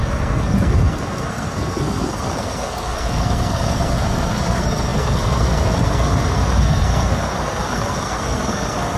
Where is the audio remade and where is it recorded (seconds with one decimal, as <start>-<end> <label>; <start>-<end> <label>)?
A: 0.0-9.0 remade